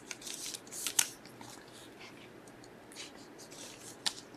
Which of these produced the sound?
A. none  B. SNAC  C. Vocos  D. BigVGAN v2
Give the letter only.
A